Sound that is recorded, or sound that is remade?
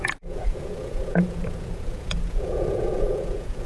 remade